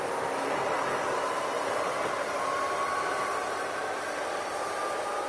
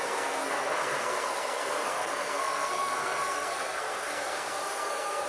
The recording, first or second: first